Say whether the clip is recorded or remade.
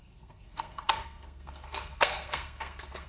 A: remade